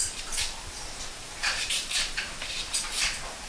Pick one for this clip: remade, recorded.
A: remade